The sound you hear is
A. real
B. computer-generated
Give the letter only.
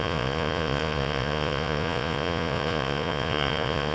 B